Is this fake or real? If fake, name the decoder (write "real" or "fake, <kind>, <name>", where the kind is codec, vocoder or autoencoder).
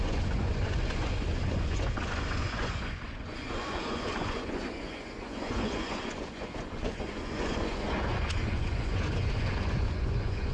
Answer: fake, vocoder, Vocos